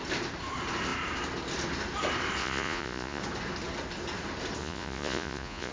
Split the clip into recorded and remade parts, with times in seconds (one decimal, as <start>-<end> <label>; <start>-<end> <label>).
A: 0.0-2.4 recorded; 2.4-3.2 remade; 3.2-4.6 recorded; 4.6-5.7 remade